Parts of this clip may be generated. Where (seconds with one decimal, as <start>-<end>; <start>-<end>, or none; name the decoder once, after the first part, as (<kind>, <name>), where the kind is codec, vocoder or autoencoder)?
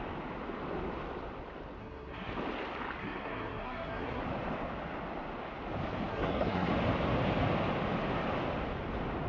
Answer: 1.8-2.3 (codec, SNAC); 3.0-4.2; 6.1-6.7